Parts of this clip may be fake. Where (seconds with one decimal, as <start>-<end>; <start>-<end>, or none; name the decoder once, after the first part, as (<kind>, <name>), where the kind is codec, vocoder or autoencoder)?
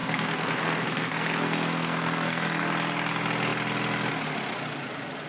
0.0-2.6 (codec, SNAC)